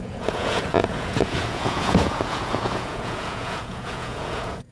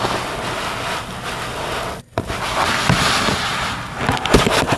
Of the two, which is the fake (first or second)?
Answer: first